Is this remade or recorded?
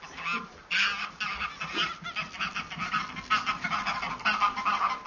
recorded